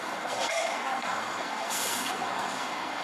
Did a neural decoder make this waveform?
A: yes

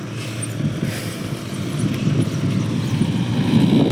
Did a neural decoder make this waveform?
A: no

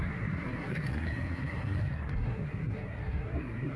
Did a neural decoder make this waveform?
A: yes